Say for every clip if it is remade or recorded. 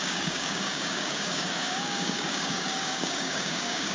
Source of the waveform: remade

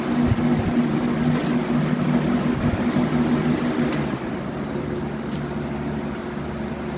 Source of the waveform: recorded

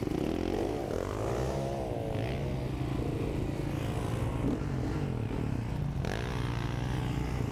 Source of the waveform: recorded